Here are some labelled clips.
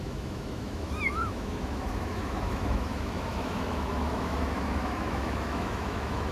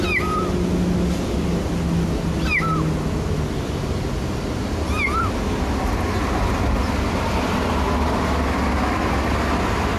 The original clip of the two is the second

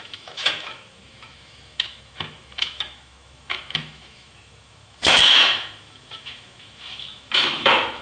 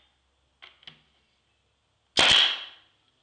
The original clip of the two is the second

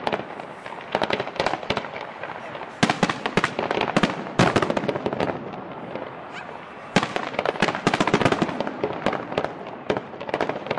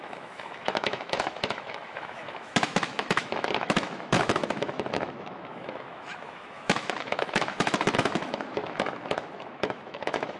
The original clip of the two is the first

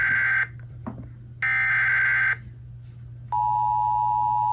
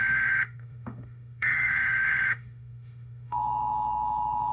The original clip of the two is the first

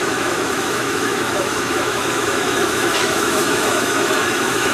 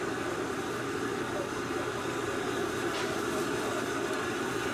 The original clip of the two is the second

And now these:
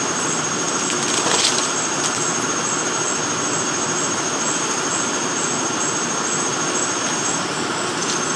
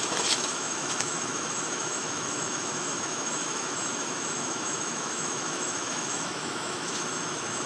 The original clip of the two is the first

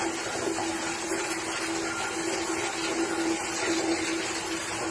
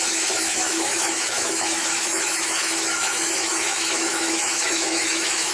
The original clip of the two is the first